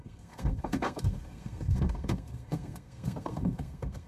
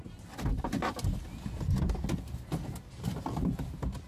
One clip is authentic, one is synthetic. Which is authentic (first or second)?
second